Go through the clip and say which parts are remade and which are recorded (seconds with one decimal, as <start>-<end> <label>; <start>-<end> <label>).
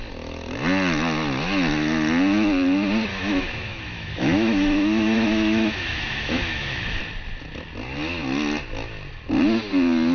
0.0-3.1 recorded; 3.1-7.0 remade; 7.0-10.1 recorded